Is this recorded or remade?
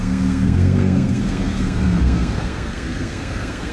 remade